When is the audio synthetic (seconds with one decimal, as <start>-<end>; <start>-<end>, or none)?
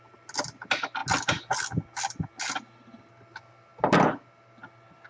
none